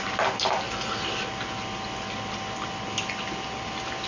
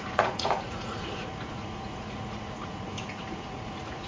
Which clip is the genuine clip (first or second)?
first